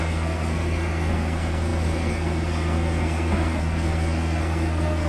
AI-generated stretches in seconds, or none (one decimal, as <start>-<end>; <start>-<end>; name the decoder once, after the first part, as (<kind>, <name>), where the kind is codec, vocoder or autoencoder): 0.0-5.1 (codec, SNAC)